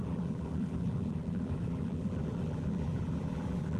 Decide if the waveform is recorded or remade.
remade